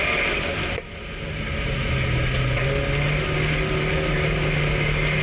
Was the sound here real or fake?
real